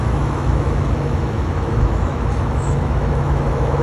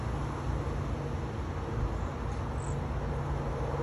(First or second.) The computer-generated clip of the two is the first